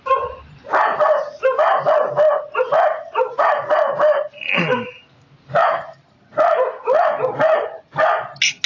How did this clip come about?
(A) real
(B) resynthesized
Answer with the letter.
A